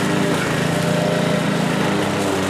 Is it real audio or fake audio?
real